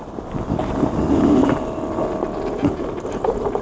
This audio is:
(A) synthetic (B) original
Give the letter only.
B